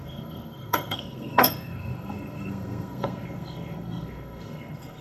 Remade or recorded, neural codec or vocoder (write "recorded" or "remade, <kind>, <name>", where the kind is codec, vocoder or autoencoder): remade, codec, SNAC